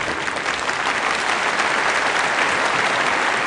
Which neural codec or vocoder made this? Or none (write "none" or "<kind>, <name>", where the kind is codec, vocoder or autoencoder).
none